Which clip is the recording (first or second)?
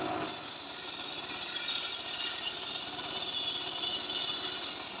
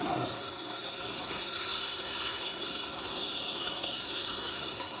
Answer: first